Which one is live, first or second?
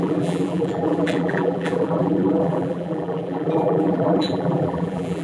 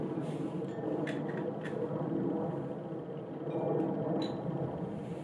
second